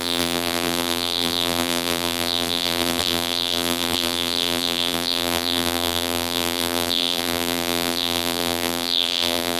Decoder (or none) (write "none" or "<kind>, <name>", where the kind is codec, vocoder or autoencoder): vocoder, BigVGAN v2